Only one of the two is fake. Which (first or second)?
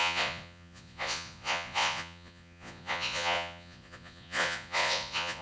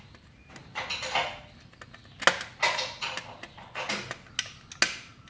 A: first